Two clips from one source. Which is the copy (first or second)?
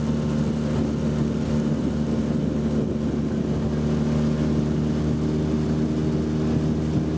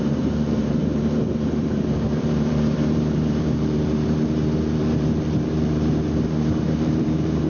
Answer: second